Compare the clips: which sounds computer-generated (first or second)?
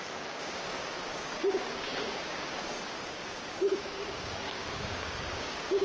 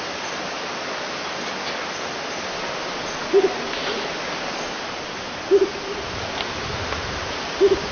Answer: first